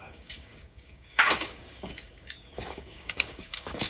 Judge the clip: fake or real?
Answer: fake